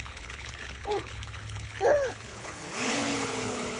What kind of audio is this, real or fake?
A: fake